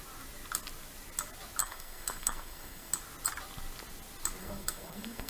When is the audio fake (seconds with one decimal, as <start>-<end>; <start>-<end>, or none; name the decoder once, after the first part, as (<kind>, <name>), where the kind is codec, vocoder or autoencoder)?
1.6-2.9 (codec, SNAC); 4.4-5.3